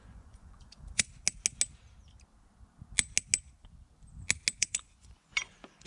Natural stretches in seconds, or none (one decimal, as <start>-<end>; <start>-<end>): 1.1-4.6